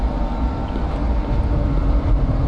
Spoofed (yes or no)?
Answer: no